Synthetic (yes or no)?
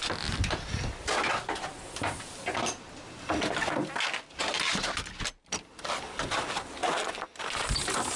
no